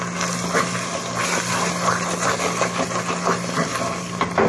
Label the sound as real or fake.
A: real